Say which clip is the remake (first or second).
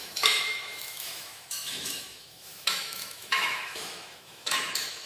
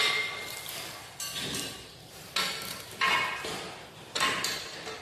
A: first